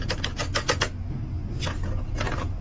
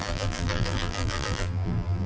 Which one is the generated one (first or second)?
second